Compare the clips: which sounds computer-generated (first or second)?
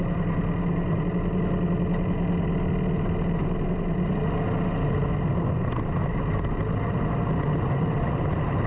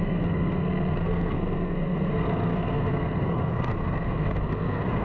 second